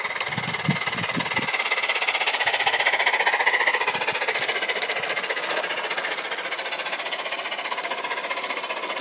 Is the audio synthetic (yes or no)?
no